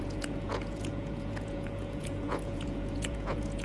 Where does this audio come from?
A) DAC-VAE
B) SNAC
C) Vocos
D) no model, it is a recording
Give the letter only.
C